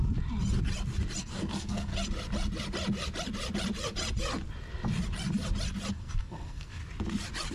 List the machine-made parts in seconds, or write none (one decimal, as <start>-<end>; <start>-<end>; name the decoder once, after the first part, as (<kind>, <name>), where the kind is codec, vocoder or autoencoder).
1.2-1.9 (codec, SNAC); 5.9-6.8